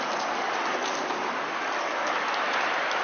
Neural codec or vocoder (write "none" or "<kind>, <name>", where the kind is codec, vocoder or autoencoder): none